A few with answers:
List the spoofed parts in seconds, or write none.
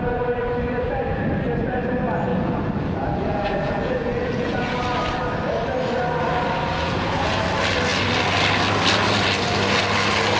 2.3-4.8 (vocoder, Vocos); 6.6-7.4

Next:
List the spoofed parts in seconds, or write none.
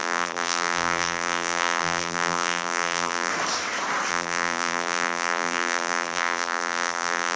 0.0-3.3 (vocoder, BigVGAN v2); 4.1-7.4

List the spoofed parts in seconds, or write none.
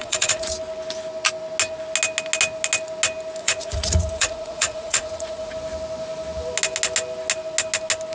0.0-0.5 (vocoder, Vocos); 3.4-5.5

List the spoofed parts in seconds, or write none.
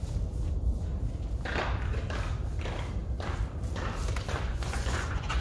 4.5-5.4 (vocoder, Vocos)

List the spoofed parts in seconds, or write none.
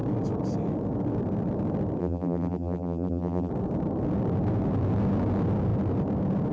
2.0-3.5 (vocoder, BigVGAN v2)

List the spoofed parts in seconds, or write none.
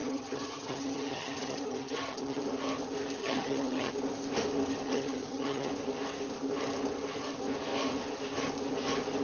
0.0-2.4 (vocoder, HiFi-GAN); 3.2-3.9; 4.8-5.7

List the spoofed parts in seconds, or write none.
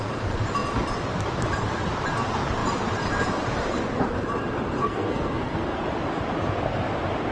4.8-5.8 (codec, SNAC)